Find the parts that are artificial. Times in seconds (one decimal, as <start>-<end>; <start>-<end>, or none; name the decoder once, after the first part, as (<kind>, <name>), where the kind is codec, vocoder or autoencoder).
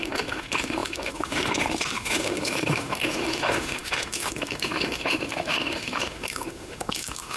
0.0-7.4 (autoencoder, DAC-VAE)